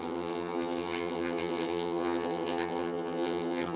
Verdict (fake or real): fake